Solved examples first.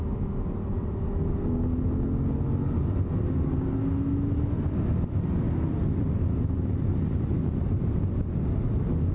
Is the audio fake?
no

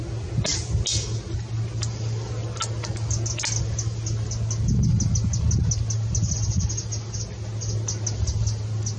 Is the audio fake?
no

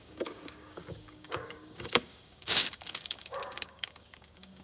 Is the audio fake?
yes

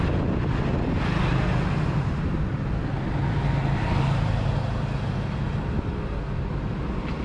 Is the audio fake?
no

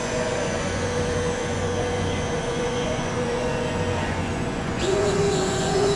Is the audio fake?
yes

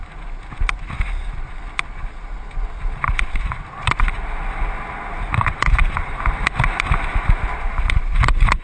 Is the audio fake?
no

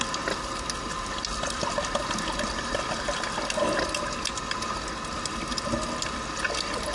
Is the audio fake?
no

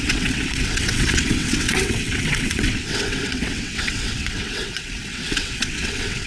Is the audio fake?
yes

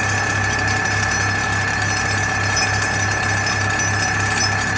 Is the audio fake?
no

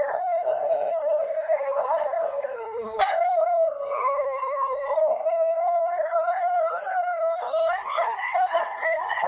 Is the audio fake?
yes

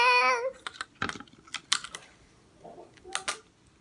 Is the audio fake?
no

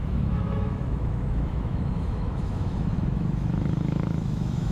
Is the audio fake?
yes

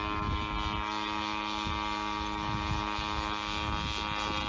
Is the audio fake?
no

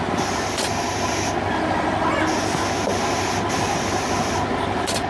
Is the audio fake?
no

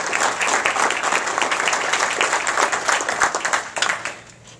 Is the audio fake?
no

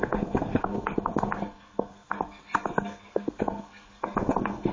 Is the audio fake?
yes